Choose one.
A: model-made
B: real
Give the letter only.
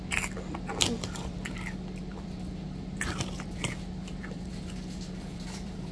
A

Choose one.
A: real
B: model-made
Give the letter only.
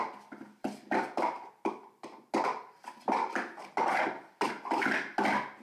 A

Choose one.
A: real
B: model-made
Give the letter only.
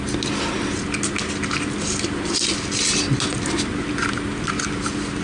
A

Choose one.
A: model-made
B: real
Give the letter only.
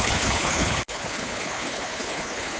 A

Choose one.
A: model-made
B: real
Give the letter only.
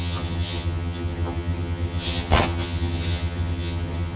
A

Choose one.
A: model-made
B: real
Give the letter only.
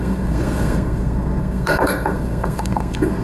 A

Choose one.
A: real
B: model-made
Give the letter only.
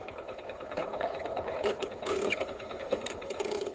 B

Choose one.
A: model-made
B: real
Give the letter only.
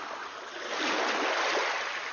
B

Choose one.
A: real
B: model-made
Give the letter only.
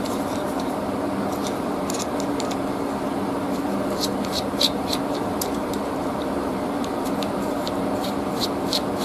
B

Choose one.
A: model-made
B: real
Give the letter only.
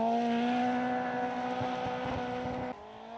B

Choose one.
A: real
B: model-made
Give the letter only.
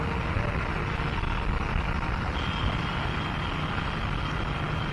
A